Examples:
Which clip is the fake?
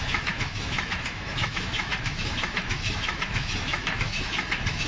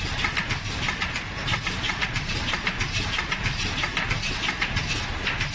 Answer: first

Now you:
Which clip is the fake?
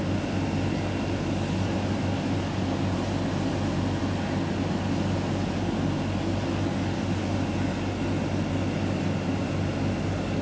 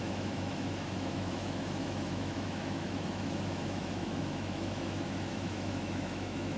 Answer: second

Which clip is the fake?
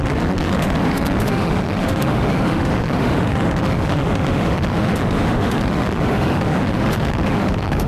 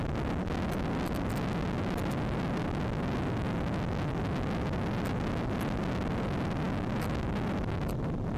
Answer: first